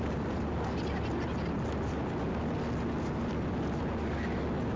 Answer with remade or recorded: recorded